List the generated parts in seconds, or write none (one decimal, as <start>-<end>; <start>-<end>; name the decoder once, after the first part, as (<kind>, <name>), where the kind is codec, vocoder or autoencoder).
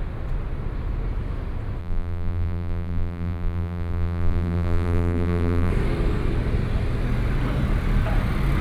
1.8-5.7 (vocoder, BigVGAN v2)